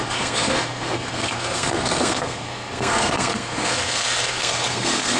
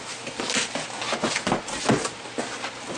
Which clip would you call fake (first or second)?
first